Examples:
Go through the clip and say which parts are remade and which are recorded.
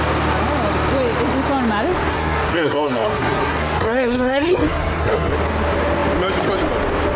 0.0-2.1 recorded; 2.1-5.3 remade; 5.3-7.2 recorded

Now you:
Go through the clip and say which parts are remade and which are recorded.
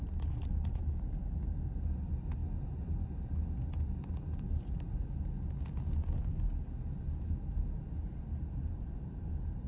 0.0-9.7 recorded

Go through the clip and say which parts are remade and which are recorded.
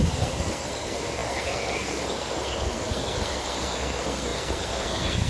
0.0-5.3 remade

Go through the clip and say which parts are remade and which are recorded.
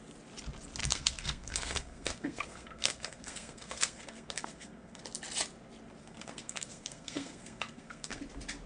0.0-0.8 recorded; 0.8-5.0 remade; 5.0-6.0 recorded; 6.0-8.2 remade; 8.2-8.7 recorded